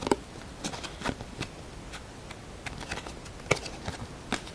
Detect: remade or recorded recorded